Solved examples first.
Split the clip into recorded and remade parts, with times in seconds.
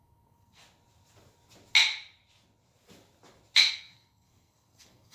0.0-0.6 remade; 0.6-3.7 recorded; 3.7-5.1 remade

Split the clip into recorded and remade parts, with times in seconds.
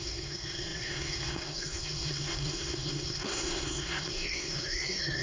0.0-5.2 remade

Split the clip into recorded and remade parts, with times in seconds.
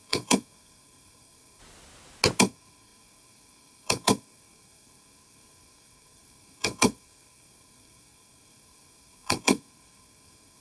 0.0-1.6 remade; 1.6-2.4 recorded; 2.4-10.6 remade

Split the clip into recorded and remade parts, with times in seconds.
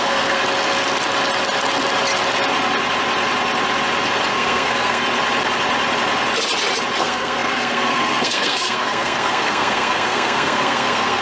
0.0-0.4 remade; 0.4-4.3 recorded; 4.3-5.0 remade; 5.0-7.0 recorded; 7.0-11.2 remade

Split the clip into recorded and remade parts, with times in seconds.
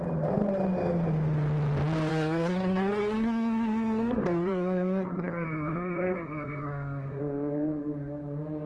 0.0-2.1 recorded; 2.1-7.2 remade; 7.2-8.7 recorded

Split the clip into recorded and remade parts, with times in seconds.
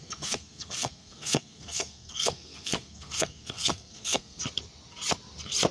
0.0-4.4 remade; 4.4-5.7 recorded